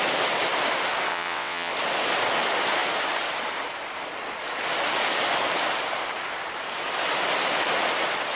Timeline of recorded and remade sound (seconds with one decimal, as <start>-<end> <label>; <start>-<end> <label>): 0.0-1.1 recorded; 1.1-1.7 remade; 1.7-8.4 recorded